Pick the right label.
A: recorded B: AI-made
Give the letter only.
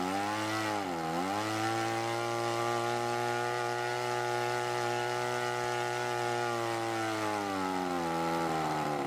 A